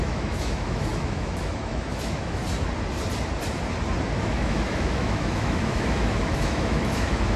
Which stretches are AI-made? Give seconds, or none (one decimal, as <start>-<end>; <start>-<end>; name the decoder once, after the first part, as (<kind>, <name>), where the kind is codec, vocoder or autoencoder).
0.0-2.4 (autoencoder, DAC-VAE); 4.2-7.4